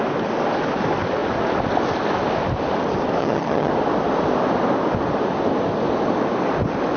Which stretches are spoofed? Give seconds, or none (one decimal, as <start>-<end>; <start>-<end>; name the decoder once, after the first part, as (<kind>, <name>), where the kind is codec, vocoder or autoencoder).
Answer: 3.2-3.7 (vocoder, HiFi-GAN)